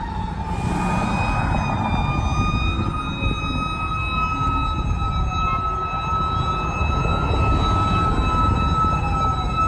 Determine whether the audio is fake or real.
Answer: real